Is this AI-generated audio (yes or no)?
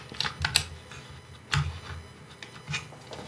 no